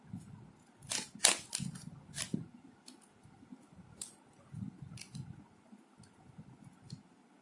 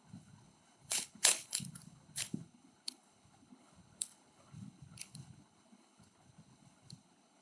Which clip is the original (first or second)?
first